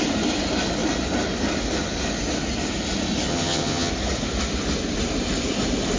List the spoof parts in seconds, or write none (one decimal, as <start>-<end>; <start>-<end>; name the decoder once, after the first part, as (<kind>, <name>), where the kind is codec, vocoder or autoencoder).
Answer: 3.3-3.9 (vocoder, HiFi-GAN)